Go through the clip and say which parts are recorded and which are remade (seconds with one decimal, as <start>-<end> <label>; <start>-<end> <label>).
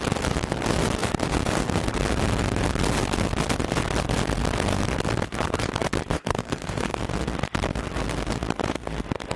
0.0-6.1 recorded; 6.1-7.0 remade; 7.0-9.4 recorded